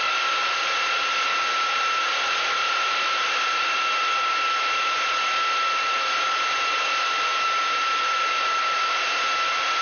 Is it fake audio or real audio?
real